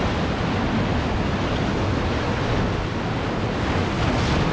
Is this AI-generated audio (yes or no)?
no